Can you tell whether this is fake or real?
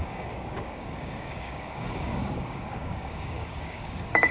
fake